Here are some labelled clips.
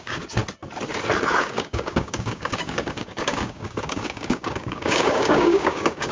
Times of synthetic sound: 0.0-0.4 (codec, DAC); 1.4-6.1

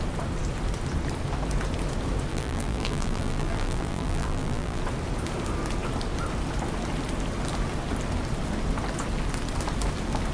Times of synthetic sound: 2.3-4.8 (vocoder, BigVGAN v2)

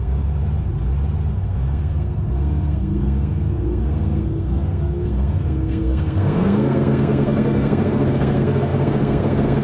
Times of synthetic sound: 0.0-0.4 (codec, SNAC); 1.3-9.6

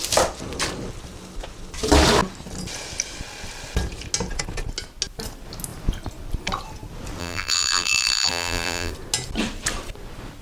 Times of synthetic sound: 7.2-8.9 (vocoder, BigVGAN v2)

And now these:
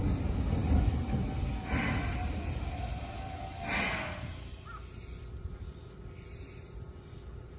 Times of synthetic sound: none

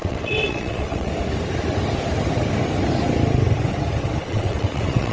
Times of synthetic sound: 0.0-1.1 (vocoder, WaveNeXt); 4.2-5.1